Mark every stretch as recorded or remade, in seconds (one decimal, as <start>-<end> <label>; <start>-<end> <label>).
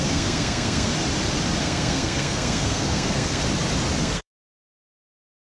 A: 0.0-0.9 remade; 0.9-1.6 recorded; 1.6-3.4 remade; 3.4-4.0 recorded; 4.0-5.4 remade